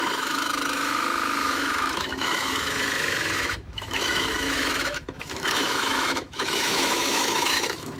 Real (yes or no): no